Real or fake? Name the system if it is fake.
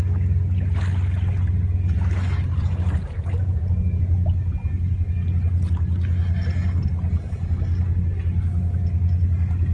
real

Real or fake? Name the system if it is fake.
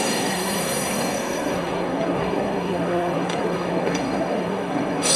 fake, codec, SNAC